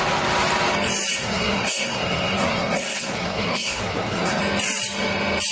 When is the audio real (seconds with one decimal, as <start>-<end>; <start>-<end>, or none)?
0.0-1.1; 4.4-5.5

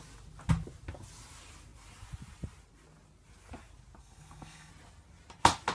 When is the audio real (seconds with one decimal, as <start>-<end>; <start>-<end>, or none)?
0.0-4.0; 4.7-5.7

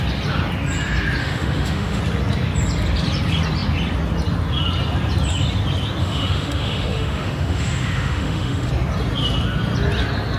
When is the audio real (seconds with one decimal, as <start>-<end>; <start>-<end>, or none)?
0.0-1.2; 2.0-6.0; 8.7-10.4

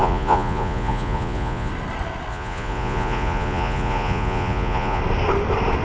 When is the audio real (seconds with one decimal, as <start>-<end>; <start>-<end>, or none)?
1.7-2.3; 5.0-5.8